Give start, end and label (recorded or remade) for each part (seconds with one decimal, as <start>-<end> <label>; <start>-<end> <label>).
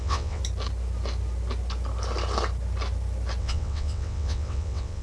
0.0-0.4 remade; 0.4-3.4 recorded; 3.4-5.0 remade